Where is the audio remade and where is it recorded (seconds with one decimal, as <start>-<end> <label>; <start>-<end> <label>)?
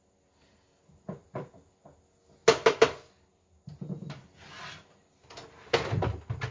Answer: 0.0-6.5 recorded